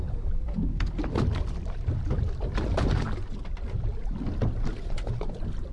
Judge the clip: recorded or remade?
recorded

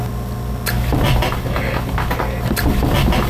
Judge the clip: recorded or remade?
recorded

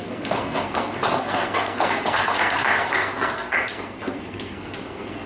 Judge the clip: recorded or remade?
remade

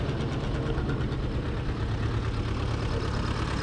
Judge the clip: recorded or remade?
recorded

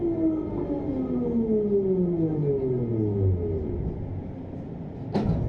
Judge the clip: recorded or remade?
recorded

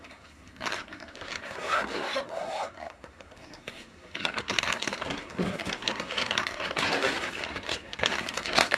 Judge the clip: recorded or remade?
remade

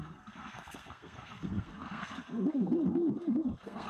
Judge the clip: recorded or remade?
remade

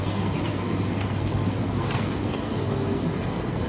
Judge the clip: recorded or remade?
remade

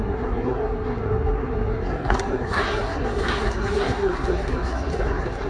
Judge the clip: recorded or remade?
remade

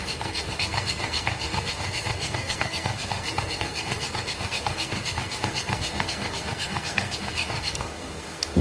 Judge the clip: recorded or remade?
remade